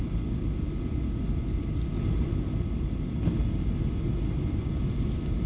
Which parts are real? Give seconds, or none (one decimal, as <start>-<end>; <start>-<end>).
0.0-5.5